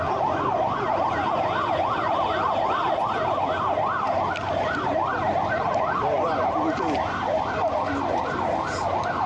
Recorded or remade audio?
recorded